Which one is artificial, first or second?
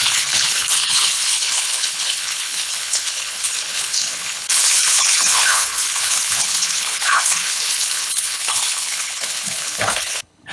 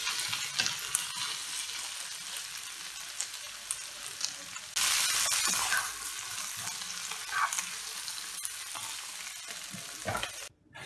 first